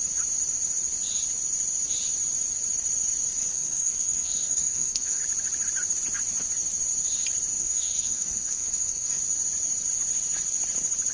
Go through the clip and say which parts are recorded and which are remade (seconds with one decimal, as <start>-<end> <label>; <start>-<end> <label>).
0.0-3.4 recorded; 3.4-5.2 remade; 5.2-7.6 recorded; 7.6-9.2 remade; 9.2-11.1 recorded